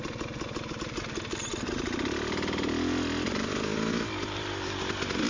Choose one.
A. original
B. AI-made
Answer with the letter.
A